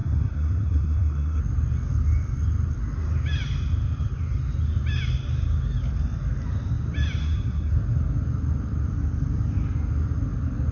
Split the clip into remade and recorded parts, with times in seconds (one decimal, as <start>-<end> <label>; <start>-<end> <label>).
0.0-1.4 remade; 1.4-7.2 recorded; 7.2-7.7 remade; 7.7-10.7 recorded